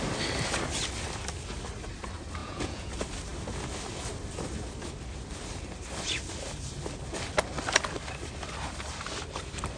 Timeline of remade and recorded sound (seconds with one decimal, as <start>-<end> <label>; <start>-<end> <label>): 0.0-2.4 recorded; 2.4-2.9 remade; 2.9-9.8 recorded